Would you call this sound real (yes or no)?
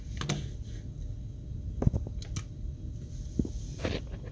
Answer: yes